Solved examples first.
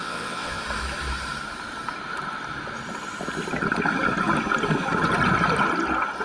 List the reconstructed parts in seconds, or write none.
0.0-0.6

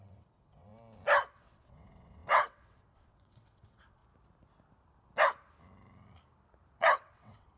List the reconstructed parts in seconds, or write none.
0.0-0.7; 1.3-4.0; 6.7-7.6

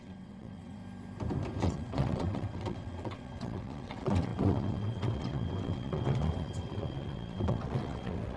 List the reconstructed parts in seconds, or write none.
0.0-0.8; 1.6-8.4